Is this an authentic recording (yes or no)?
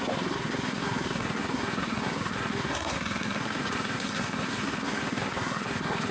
no